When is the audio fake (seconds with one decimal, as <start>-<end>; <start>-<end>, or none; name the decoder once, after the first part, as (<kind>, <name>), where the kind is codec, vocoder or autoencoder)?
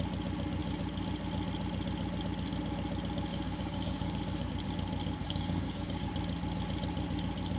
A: 3.3-4.5 (codec, DAC); 5.2-6.1